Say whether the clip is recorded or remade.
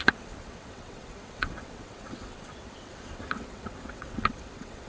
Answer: remade